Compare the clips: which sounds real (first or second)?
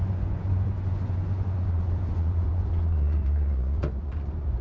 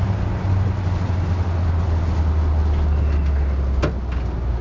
second